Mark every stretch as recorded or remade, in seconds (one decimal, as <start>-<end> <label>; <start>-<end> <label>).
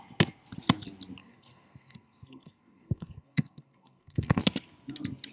0.0-1.2 recorded; 1.2-4.4 remade; 4.4-5.3 recorded